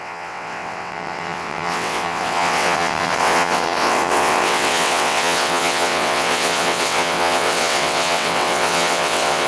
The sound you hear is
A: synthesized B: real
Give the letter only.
A